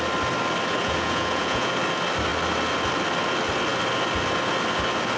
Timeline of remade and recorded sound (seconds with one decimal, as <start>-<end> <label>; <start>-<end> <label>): 0.0-0.8 recorded; 0.8-1.7 remade; 1.7-5.2 recorded